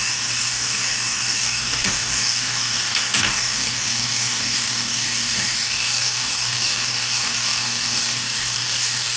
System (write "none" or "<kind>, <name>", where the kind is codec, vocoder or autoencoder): codec, DAC